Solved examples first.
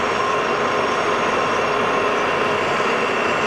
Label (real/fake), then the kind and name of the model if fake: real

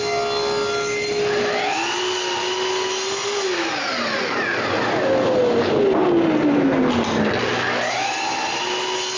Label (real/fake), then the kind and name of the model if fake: real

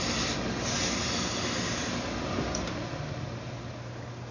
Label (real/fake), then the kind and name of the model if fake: real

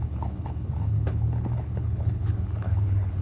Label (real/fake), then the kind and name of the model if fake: fake, codec, HILCodec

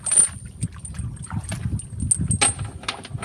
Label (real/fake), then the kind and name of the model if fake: real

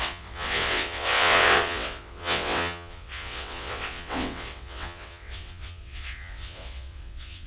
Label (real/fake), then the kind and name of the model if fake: fake, vocoder, WaveNeXt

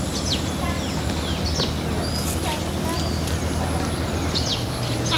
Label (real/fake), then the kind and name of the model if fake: real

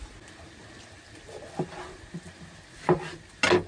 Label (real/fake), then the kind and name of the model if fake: real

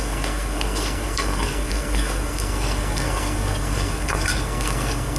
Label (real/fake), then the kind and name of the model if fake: fake, codec, SNAC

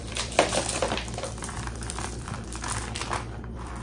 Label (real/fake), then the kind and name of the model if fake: fake, vocoder, BigVGAN v2